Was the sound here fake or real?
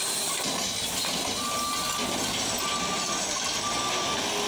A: real